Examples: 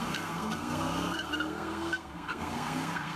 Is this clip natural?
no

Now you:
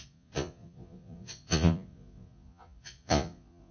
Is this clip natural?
no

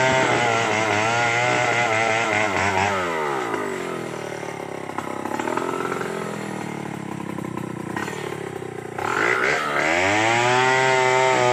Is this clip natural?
yes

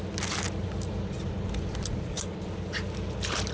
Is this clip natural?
yes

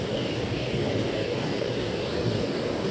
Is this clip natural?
no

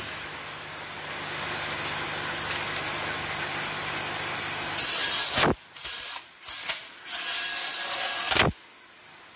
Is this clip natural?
yes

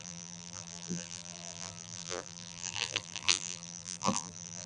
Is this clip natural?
no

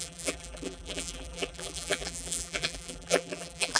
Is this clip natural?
no